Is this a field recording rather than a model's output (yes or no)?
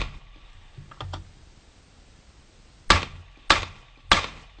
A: yes